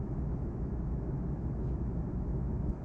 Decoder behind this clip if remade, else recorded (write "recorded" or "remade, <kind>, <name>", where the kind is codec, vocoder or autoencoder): remade, autoencoder, DAC-VAE